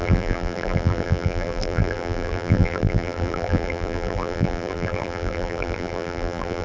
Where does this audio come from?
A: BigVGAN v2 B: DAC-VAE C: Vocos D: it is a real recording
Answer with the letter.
A